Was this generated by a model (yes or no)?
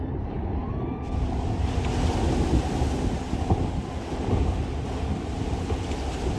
no